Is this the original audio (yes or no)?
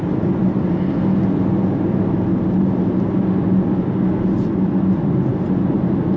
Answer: yes